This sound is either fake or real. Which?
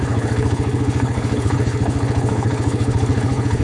fake